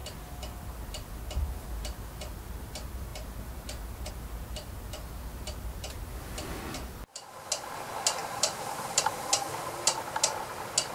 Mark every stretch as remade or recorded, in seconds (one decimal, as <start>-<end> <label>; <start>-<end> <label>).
0.0-8.2 recorded; 8.2-9.0 remade; 9.0-10.9 recorded